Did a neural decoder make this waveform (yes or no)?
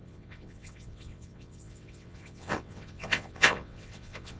yes